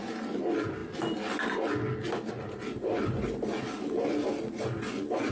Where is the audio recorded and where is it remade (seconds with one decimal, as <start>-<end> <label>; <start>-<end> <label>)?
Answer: 0.0-5.3 recorded